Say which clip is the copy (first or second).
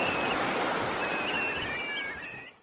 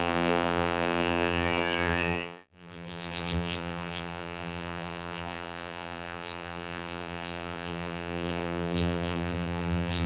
second